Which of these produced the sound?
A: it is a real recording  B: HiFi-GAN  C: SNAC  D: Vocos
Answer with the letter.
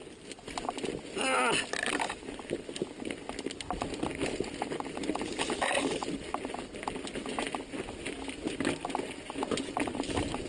A